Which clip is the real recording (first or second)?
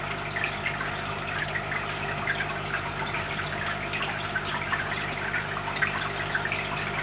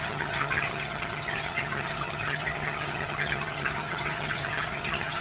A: first